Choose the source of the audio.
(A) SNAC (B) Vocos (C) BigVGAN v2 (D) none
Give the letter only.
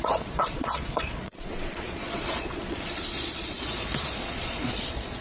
B